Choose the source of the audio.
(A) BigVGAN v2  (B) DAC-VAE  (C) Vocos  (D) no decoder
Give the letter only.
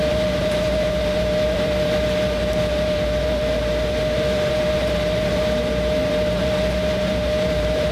A